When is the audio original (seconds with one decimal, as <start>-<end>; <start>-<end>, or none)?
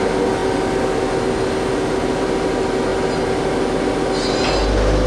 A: 0.0-5.1